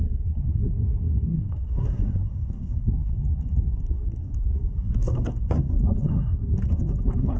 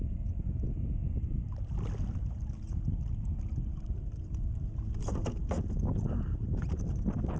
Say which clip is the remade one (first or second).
first